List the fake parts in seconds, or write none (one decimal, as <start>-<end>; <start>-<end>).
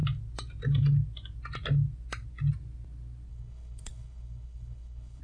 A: 3.3-5.2